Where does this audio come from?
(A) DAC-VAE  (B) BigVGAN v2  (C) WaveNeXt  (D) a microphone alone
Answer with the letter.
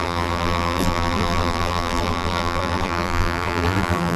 B